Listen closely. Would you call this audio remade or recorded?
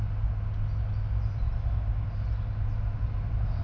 recorded